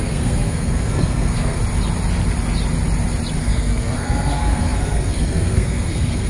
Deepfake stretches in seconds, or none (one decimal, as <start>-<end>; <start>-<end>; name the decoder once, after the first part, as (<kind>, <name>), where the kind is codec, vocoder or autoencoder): 0.0-1.6 (codec, SNAC); 3.4-6.3